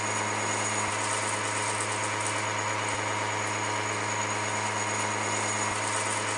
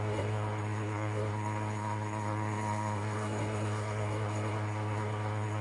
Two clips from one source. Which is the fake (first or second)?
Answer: second